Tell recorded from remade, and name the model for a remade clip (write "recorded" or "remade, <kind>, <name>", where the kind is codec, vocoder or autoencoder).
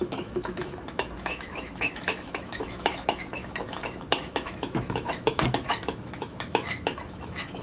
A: remade, autoencoder, DAC-VAE